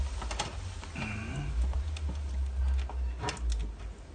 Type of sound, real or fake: real